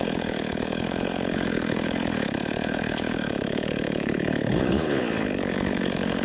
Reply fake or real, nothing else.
fake